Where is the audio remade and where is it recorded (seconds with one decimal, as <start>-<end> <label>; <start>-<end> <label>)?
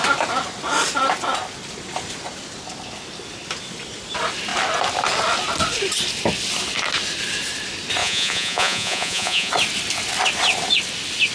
0.0-8.0 recorded; 8.0-9.5 remade; 9.5-11.3 recorded